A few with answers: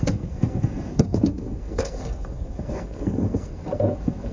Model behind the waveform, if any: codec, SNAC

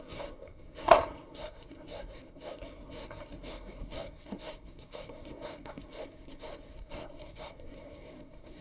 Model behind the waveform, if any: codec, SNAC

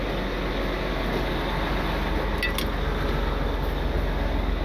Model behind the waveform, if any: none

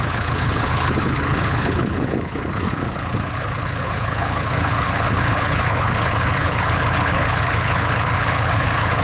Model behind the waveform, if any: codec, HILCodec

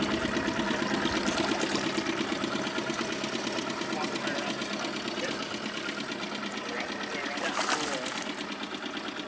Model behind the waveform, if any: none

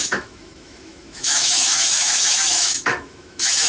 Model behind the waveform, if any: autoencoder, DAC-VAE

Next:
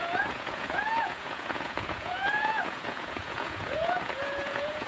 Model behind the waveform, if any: vocoder, Vocos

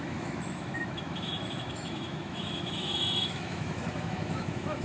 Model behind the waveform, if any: autoencoder, DAC-VAE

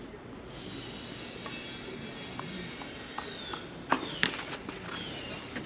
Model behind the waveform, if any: none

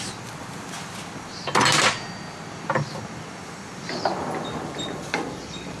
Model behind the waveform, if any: none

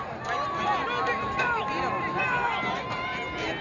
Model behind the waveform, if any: none